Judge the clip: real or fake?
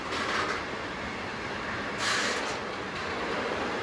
real